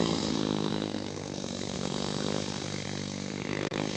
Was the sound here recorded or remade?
remade